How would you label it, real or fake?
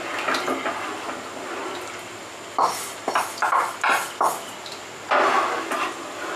real